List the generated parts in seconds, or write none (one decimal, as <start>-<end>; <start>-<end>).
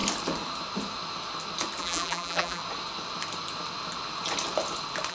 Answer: 1.8-2.6